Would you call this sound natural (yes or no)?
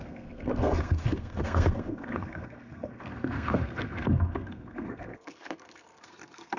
no